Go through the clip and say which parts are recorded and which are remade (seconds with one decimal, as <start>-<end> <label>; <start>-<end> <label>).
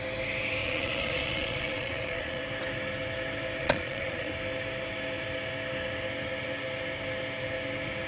0.0-0.6 recorded; 0.6-2.4 remade; 2.4-3.6 recorded; 3.6-4.3 remade; 4.3-8.1 recorded